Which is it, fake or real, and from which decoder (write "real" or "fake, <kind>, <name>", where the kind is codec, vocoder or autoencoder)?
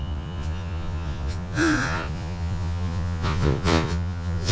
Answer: fake, vocoder, Vocos